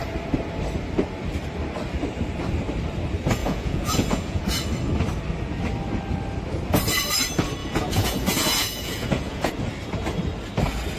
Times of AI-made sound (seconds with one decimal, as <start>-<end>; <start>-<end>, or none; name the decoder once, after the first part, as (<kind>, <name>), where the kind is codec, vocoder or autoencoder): 3.4-4.4 (vocoder, Vocos); 7.6-9.5